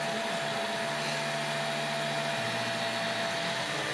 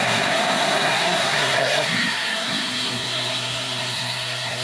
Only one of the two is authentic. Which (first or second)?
first